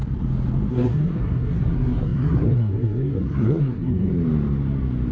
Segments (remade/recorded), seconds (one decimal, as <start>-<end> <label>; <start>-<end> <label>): 0.0-0.7 recorded; 0.7-4.1 remade; 4.1-5.1 recorded